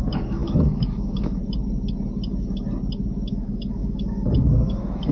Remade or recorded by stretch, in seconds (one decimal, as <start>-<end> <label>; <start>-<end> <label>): 0.0-1.4 remade; 1.4-3.3 recorded; 3.3-5.1 remade